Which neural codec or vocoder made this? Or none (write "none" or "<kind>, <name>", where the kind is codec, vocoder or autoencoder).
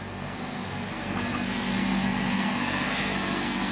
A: codec, SNAC